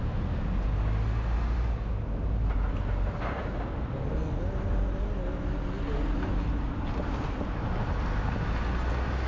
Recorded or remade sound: recorded